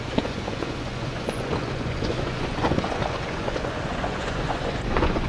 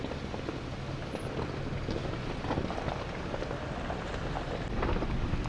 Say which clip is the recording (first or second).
second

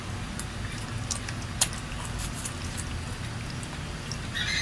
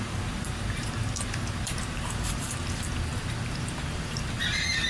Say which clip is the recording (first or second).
first